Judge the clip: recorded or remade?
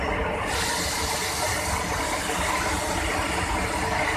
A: recorded